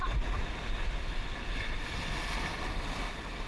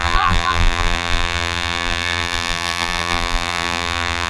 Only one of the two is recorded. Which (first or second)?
first